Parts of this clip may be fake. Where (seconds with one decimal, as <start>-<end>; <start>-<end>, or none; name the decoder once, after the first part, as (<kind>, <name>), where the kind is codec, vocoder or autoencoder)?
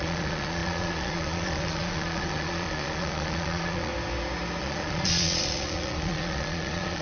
0.0-3.9 (vocoder, Vocos); 4.6-7.0